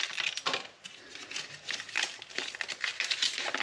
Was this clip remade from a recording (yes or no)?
no